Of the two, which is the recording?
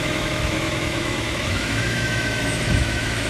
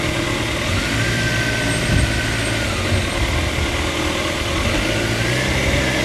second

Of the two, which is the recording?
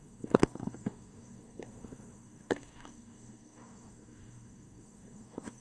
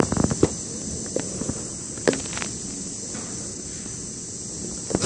second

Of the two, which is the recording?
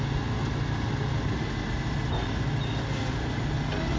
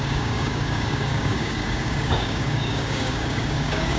first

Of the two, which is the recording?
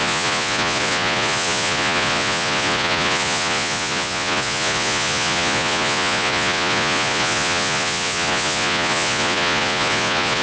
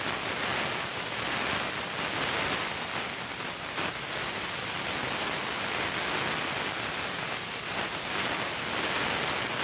second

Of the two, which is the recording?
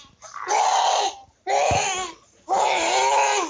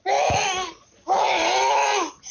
first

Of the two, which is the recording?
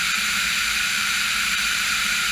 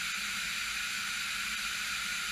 second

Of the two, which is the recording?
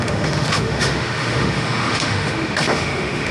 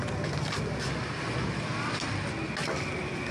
second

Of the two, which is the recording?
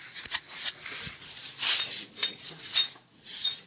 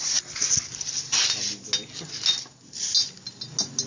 second